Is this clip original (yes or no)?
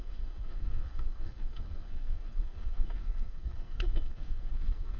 no